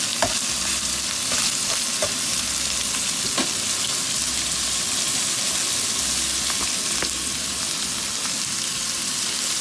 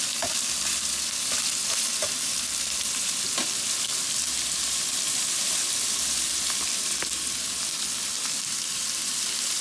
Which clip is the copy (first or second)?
second